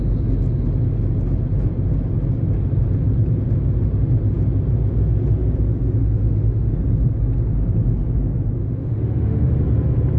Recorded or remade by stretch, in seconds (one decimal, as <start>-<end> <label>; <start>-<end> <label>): 0.0-6.0 recorded; 6.0-6.7 remade; 6.7-8.6 recorded; 8.6-9.5 remade; 9.5-10.2 recorded